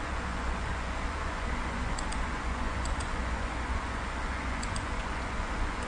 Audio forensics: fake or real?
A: fake